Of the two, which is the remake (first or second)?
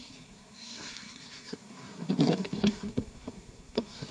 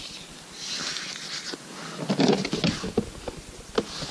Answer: first